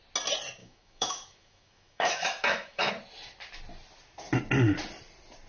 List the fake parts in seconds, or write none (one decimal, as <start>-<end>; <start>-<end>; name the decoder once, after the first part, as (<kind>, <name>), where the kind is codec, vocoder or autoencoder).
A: 0.6-2.9 (autoencoder, DAC-VAE)